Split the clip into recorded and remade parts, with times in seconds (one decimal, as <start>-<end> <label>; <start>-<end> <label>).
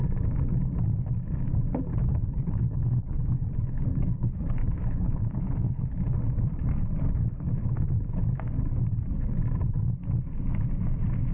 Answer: 0.0-1.9 recorded; 1.9-6.2 remade; 6.2-11.3 recorded